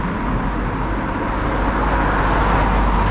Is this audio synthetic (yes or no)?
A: no